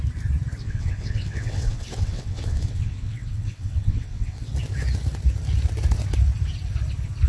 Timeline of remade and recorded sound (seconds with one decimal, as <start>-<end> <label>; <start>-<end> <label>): 0.0-0.6 recorded; 0.6-4.5 remade; 4.5-7.3 recorded